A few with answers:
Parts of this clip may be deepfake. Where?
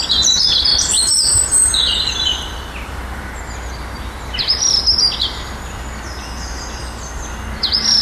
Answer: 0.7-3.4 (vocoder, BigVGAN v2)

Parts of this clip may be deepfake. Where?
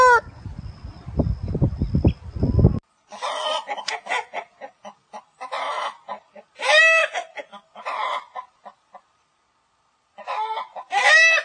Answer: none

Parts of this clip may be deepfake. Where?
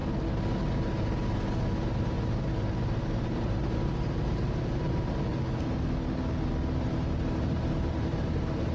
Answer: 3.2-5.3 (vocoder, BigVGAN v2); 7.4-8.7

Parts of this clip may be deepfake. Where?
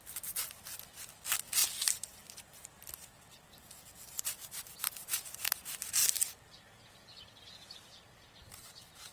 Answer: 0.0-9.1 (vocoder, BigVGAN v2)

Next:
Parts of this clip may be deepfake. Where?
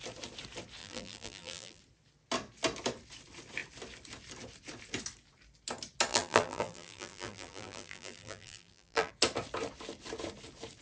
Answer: 0.8-1.8 (vocoder, BigVGAN v2); 6.1-9.1